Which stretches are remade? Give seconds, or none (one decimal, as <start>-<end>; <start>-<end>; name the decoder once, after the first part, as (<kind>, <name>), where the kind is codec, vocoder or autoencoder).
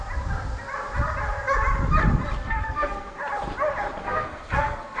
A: 2.4-3.2 (codec, SNAC); 4.0-5.0